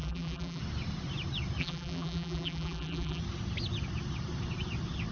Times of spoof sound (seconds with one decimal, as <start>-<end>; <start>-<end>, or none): 0.0-0.6; 1.6-3.2

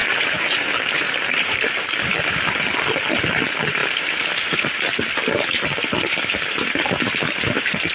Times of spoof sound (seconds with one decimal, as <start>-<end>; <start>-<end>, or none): 0.0-1.6; 3.8-4.8

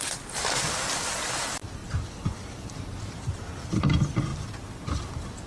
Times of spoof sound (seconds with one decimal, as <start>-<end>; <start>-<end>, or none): 0.0-5.5

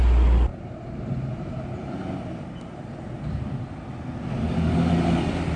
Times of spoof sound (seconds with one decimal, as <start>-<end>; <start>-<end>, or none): 0.5-3.7

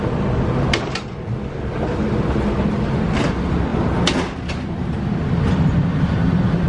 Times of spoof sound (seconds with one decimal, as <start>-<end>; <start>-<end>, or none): none

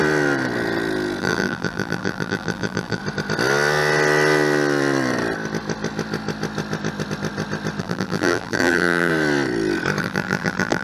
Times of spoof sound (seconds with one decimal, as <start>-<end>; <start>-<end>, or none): 1.2-3.0; 7.8-9.1; 10.0-10.8

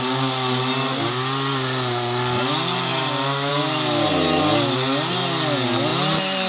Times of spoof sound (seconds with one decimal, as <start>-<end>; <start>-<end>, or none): none

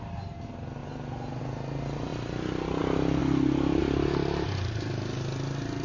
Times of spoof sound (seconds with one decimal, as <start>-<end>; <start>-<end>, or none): none